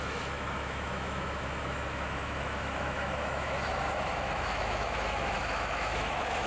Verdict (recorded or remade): remade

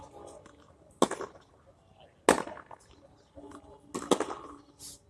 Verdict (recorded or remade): recorded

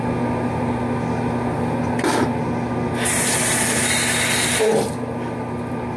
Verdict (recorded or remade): recorded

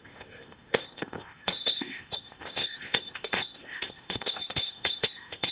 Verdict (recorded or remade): remade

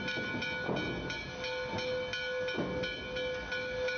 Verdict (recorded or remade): recorded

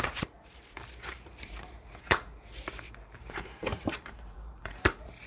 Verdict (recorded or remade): remade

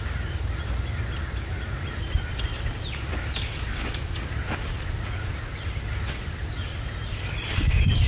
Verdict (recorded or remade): recorded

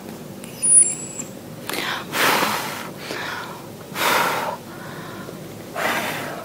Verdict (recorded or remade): recorded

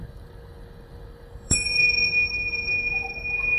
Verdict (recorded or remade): remade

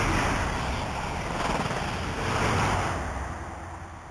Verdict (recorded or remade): recorded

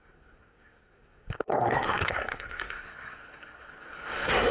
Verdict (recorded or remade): remade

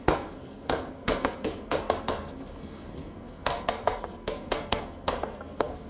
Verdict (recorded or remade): remade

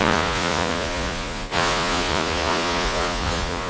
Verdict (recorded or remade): remade